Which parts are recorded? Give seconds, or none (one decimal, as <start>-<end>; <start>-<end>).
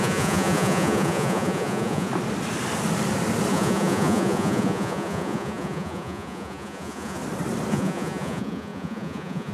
2.1-3.5; 7.2-7.7